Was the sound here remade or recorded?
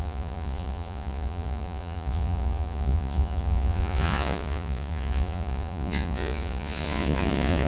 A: remade